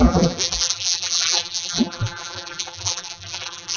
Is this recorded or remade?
remade